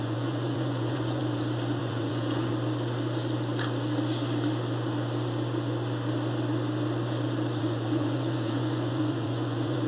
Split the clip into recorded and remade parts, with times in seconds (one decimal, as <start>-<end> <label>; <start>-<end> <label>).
0.0-1.2 remade; 1.2-1.8 recorded; 1.8-2.5 remade; 2.5-7.6 recorded; 7.6-9.9 remade